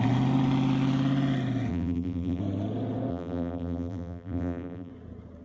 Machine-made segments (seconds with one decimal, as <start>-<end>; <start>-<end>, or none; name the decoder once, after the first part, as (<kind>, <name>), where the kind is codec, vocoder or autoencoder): 1.7-2.4 (vocoder, BigVGAN v2); 3.1-4.9